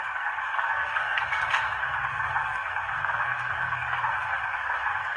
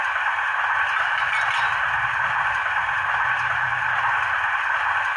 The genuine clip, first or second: second